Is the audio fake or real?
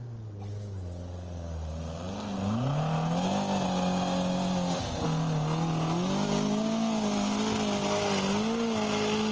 real